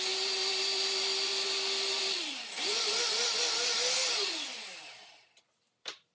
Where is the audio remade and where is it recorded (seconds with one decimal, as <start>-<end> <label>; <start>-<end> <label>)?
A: 0.0-1.3 remade; 1.3-2.0 recorded; 2.0-3.6 remade; 3.6-5.1 recorded; 5.1-6.1 remade